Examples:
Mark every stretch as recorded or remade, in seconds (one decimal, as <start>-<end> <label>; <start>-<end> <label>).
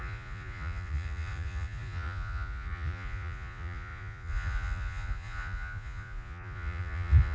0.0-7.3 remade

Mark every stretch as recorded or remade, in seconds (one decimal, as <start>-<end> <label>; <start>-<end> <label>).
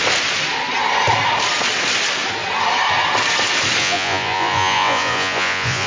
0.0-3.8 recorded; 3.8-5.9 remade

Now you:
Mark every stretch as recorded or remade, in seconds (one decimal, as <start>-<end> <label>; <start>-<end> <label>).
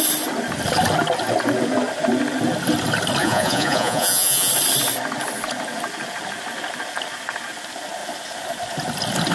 0.0-3.2 recorded; 3.2-4.5 remade; 4.5-9.3 recorded